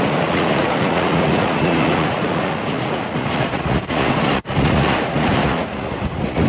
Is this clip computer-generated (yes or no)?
yes